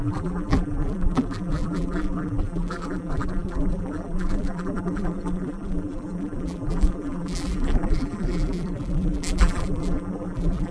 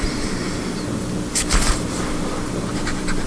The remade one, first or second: first